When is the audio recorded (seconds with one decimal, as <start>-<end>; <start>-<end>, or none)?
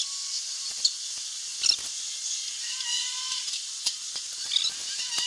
0.0-5.3